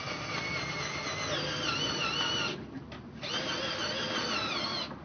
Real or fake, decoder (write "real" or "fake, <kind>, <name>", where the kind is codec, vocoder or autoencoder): real